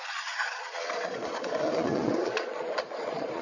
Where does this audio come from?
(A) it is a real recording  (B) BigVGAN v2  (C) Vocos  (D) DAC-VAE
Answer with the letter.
C